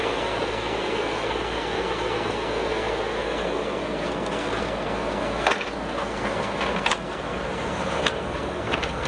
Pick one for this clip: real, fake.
fake